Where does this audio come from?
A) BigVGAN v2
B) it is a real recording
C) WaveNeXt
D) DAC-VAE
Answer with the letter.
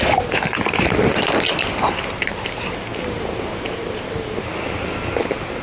B